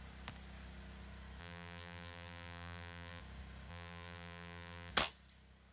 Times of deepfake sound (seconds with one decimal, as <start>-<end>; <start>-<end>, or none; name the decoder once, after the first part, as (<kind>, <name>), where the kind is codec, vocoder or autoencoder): 1.4-3.2 (vocoder, BigVGAN v2); 3.7-4.9